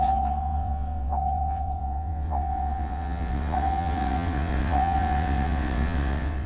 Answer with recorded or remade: remade